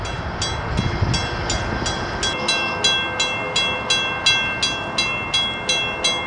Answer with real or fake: real